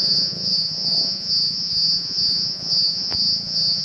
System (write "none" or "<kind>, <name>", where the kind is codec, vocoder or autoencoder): vocoder, Vocos